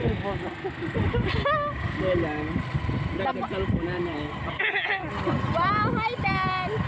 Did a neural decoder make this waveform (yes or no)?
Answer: no